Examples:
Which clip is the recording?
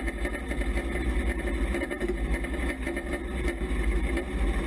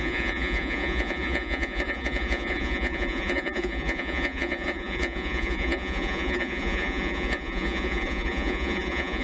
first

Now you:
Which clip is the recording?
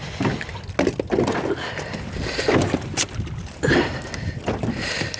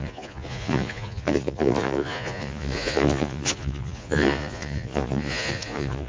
first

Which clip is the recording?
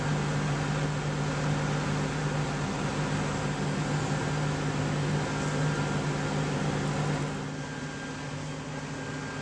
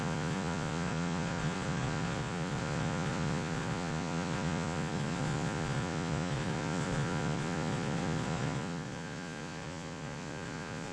first